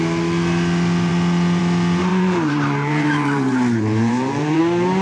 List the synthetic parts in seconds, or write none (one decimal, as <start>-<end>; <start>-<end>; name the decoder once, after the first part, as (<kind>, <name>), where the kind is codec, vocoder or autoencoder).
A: 2.1-4.6 (vocoder, BigVGAN v2)